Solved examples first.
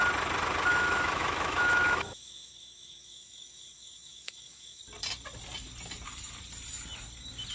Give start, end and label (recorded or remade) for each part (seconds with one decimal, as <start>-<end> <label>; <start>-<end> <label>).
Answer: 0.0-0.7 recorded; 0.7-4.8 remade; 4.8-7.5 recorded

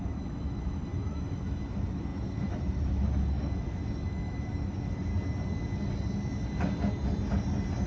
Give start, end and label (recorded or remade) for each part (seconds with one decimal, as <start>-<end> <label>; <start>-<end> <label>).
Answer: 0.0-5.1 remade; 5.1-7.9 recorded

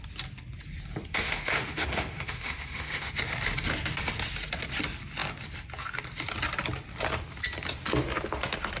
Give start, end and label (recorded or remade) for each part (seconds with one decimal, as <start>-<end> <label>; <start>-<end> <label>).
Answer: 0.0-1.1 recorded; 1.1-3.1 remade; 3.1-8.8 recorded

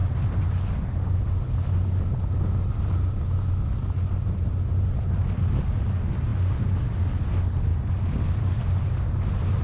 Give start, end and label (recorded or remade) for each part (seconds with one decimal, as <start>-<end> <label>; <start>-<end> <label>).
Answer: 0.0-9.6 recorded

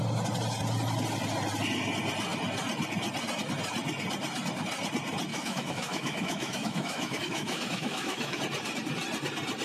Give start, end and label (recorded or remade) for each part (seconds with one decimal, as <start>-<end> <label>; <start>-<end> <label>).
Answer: 0.0-5.3 recorded; 5.3-8.4 remade; 8.4-9.6 recorded

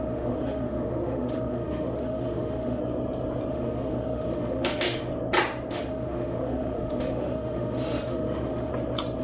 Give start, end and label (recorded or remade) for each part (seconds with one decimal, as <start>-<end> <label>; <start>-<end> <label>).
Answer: 0.0-2.8 remade; 2.8-3.5 recorded; 3.5-5.1 remade; 5.1-5.7 recorded; 5.7-8.7 remade; 8.7-9.2 recorded